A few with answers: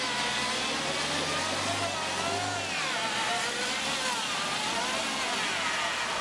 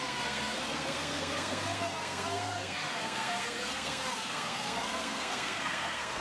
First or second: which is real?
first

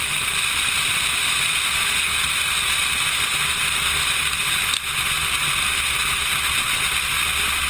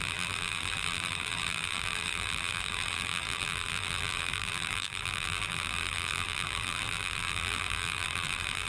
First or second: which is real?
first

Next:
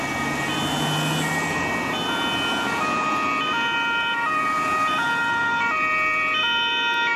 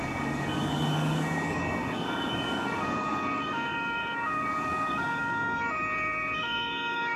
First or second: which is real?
first